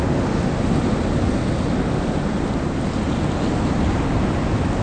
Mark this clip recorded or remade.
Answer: recorded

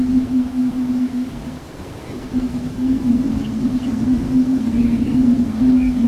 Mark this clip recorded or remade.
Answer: remade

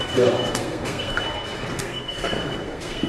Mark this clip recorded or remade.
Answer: remade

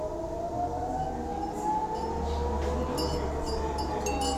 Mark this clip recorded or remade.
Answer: recorded